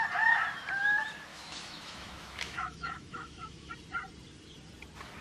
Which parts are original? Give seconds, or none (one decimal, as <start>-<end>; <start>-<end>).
0.0-1.3; 3.7-5.2